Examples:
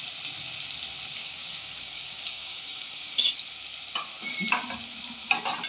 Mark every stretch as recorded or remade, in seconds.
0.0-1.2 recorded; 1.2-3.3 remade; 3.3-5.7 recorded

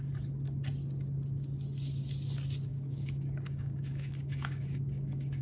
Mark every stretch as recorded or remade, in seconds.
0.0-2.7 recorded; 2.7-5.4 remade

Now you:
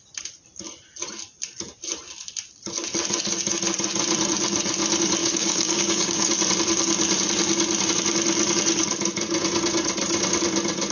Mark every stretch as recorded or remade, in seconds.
0.0-5.2 recorded; 5.2-6.3 remade; 6.3-10.9 recorded

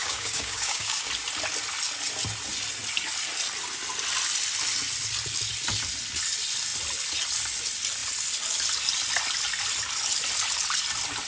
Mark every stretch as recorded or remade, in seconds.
0.0-1.1 remade; 1.1-11.3 recorded